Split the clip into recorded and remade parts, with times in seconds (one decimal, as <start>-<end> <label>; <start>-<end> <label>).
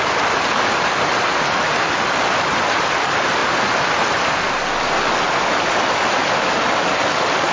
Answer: 0.0-7.5 recorded